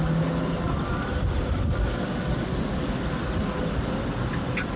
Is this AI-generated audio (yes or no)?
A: no